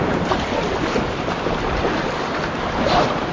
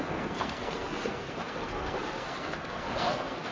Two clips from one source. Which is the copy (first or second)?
second